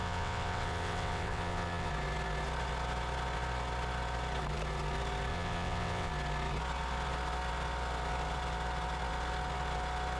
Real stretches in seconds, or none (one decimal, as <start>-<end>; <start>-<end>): 1.9-5.3; 6.1-10.2